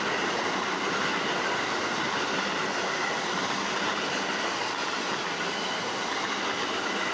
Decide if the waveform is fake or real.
real